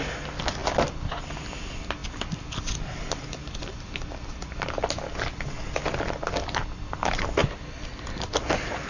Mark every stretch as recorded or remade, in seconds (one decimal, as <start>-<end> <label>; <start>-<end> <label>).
0.0-8.9 recorded